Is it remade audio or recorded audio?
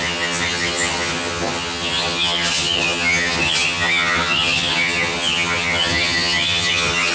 remade